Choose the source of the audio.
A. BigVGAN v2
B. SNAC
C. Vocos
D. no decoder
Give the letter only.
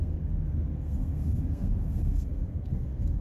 B